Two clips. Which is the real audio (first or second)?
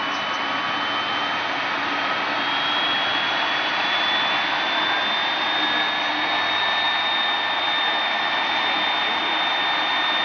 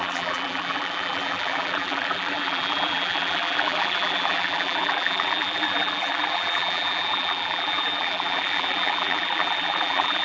first